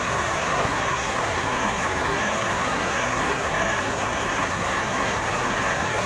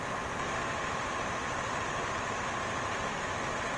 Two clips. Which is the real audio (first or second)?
second